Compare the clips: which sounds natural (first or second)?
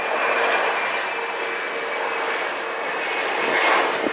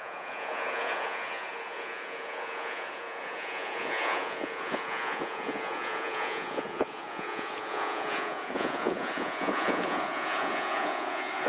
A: first